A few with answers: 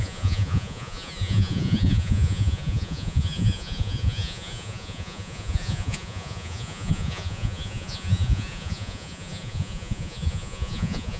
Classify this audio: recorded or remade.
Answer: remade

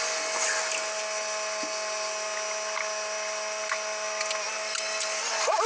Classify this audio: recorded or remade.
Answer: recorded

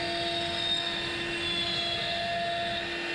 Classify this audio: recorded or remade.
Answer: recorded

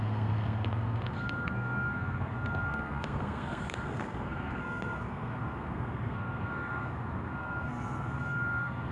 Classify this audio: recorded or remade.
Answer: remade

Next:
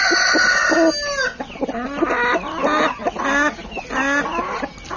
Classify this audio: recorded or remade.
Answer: recorded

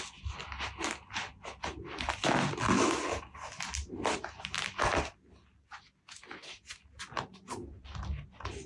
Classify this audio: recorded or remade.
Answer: recorded